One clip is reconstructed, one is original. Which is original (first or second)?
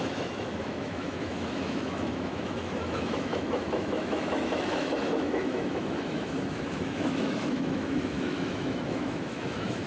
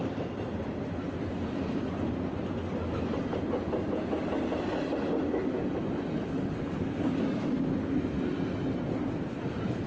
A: second